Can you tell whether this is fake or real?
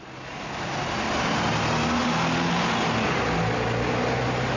real